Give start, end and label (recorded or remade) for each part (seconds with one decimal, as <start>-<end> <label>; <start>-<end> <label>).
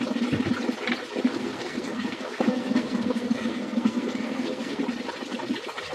0.0-1.3 recorded; 1.3-4.8 remade; 4.8-5.9 recorded